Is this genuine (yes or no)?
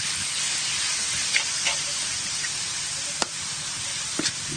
yes